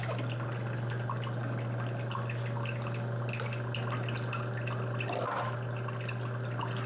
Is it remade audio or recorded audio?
recorded